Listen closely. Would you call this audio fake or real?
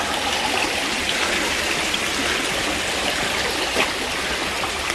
real